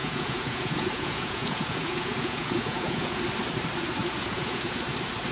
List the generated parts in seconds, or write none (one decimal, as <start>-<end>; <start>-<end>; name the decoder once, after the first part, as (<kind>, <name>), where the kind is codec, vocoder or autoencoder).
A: 0.0-3.2 (vocoder, Vocos); 4.0-4.8

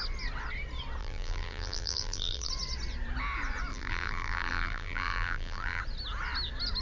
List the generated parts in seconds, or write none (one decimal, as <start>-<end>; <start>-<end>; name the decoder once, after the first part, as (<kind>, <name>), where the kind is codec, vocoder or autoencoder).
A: 1.0-2.5 (vocoder, BigVGAN v2); 3.7-5.8

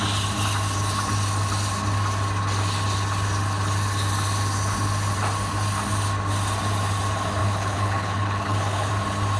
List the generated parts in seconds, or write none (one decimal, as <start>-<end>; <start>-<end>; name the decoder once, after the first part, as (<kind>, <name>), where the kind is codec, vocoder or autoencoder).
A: 7.4-8.9 (codec, HILCodec)